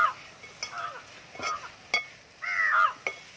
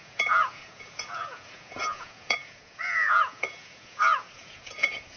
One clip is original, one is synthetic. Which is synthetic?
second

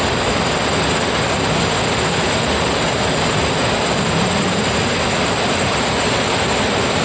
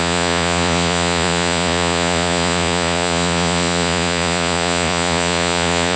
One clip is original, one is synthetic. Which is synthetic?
second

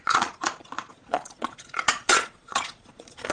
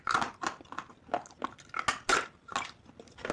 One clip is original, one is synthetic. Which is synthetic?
first